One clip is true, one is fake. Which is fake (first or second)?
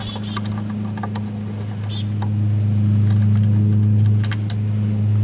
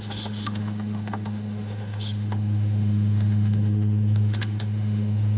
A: second